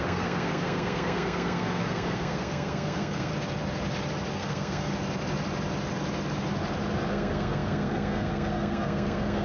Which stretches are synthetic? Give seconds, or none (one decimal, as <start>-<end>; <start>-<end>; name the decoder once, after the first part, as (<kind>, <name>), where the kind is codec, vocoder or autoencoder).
0.0-3.3 (codec, SNAC); 4.3-4.9; 7.1-9.4